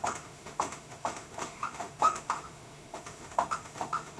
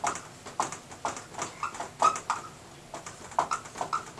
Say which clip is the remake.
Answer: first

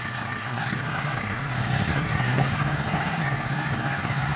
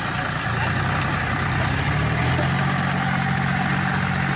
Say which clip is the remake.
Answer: first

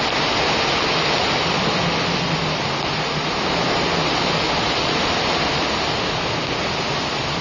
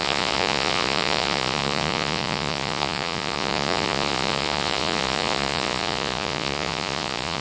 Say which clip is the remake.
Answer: second